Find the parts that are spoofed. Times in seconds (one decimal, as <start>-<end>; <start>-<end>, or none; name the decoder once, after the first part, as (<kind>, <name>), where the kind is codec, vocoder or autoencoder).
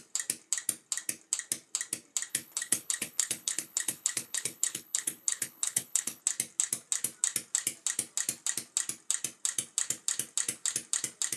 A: 2.3-6.2 (codec, HILCodec)